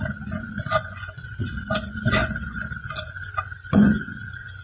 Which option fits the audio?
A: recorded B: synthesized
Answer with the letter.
B